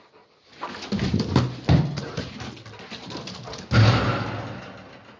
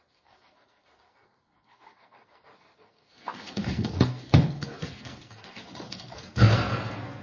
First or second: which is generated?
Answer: second